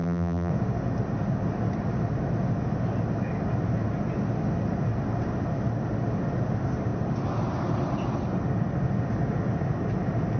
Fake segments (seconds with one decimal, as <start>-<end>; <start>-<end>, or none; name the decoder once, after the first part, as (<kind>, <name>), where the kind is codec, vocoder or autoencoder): 0.0-0.5 (vocoder, BigVGAN v2)